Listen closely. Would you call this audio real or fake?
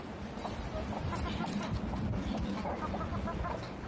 real